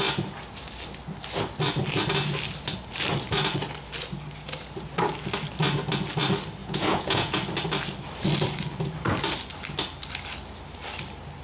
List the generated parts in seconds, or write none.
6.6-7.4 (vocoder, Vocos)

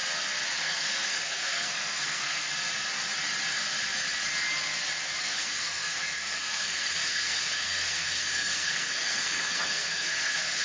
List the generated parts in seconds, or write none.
0.6-2.5 (codec, SNAC); 5.2-10.6